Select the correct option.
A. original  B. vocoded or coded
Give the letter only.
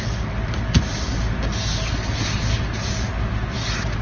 A